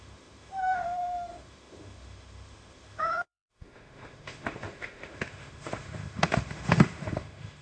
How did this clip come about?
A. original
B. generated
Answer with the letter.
B